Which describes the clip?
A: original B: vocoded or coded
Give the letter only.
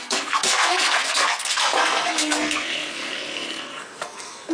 B